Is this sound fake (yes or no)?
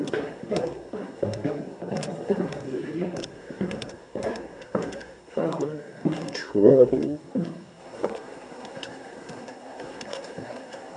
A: yes